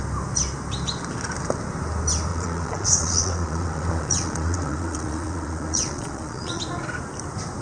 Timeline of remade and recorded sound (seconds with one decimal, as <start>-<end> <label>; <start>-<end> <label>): 0.0-2.3 recorded; 2.3-6.6 remade; 6.6-7.6 recorded